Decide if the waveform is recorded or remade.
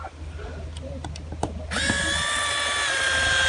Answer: recorded